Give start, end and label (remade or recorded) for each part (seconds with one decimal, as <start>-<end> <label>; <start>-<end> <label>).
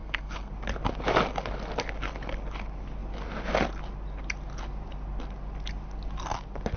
0.0-0.5 remade; 0.5-6.8 recorded